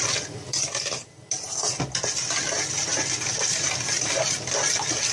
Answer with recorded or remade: recorded